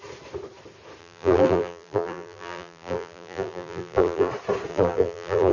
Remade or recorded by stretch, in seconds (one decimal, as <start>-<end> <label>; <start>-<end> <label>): 0.0-1.0 recorded; 1.0-4.3 remade; 4.3-4.7 recorded; 4.7-5.5 remade